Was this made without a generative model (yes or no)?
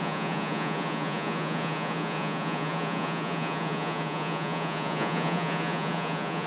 no